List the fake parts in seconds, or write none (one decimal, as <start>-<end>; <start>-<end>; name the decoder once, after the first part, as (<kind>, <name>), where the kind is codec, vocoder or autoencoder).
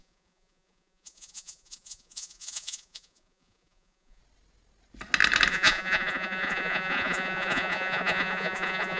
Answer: 0.0-4.2 (vocoder, Vocos); 5.5-9.0